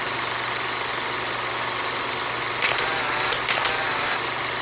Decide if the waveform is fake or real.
real